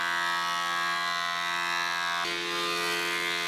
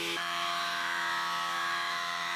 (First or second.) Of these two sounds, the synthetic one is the second